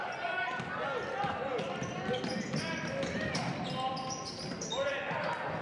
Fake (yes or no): no